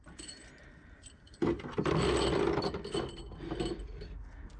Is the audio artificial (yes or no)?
no